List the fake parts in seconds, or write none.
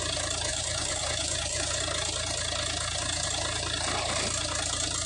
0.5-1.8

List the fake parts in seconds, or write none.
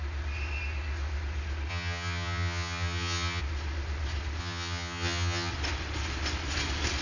1.7-3.4; 4.4-5.5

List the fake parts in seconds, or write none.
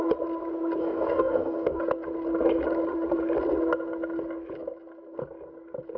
0.8-1.8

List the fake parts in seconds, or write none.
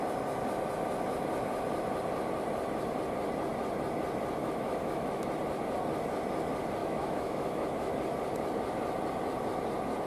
4.4-5.3; 6.8-7.9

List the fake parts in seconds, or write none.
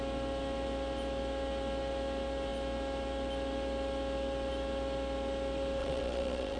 5.8-6.6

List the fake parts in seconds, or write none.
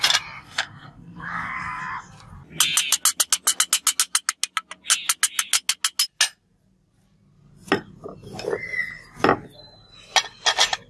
0.4-1.8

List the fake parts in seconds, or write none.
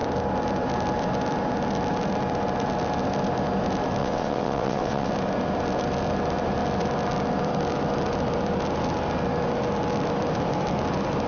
4.0-5.1